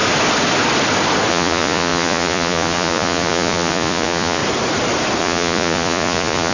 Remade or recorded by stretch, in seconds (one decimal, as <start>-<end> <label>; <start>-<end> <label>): 0.0-1.3 recorded; 1.3-4.4 remade; 4.4-5.2 recorded; 5.2-6.5 remade